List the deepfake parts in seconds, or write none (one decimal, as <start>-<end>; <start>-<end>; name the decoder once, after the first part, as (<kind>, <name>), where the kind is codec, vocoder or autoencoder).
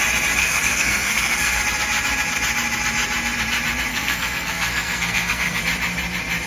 0.4-1.6 (codec, SNAC); 3.9-5.6